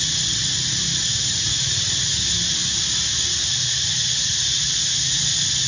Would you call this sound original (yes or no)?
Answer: yes